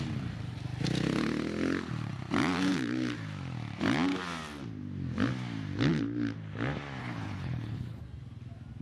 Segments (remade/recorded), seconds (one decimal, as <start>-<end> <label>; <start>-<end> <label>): 0.0-7.0 recorded; 7.0-8.0 remade; 8.0-8.8 recorded